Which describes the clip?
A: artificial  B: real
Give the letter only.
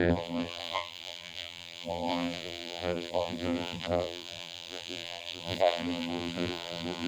A